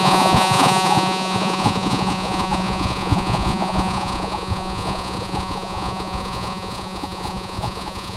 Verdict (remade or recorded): remade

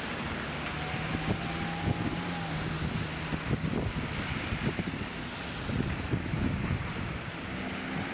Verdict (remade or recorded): recorded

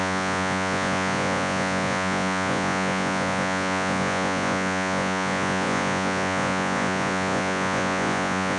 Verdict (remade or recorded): remade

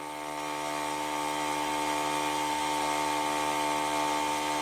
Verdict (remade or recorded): recorded